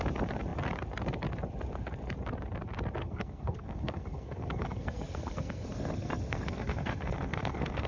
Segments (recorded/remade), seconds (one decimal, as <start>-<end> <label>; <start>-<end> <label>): 0.0-3.0 recorded; 3.0-7.9 remade

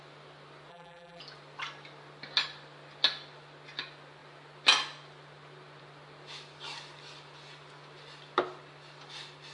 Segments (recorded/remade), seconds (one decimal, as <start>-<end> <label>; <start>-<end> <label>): 0.0-0.7 recorded; 0.7-1.2 remade; 1.2-9.5 recorded

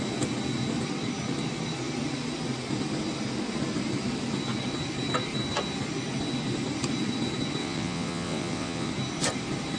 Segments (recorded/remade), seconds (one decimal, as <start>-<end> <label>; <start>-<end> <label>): 0.0-7.6 recorded; 7.6-8.9 remade; 8.9-9.8 recorded